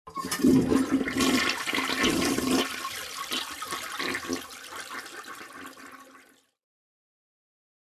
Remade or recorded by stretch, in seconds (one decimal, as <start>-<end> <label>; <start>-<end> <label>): 0.0-0.7 recorded; 0.7-3.8 remade; 3.8-7.9 recorded